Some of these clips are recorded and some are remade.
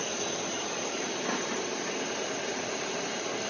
recorded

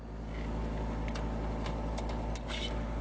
recorded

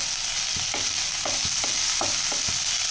recorded